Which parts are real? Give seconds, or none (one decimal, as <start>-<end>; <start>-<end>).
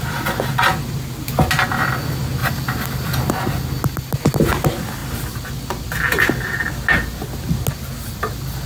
0.0-2.4; 3.3-8.7